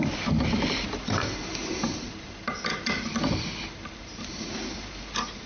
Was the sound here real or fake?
real